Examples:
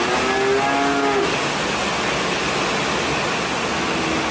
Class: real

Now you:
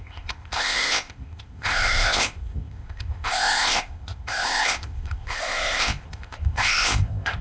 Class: fake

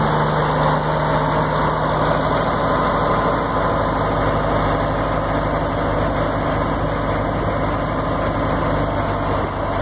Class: real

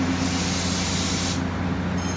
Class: real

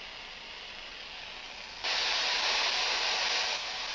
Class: real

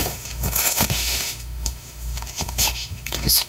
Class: fake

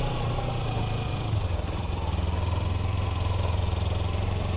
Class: fake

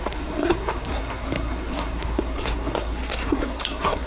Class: fake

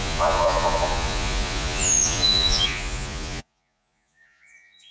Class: fake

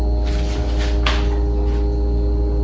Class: real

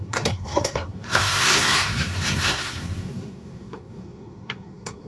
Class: fake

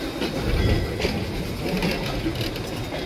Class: real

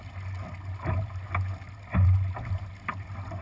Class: real